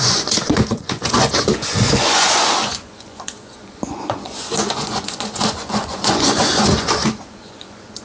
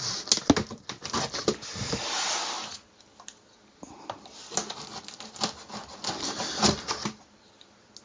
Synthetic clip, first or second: first